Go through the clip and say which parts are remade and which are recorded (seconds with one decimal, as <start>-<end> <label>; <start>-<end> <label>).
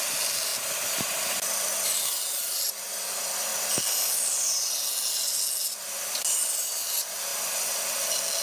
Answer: 0.0-8.4 recorded